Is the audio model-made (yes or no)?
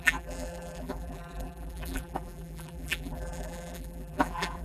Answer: yes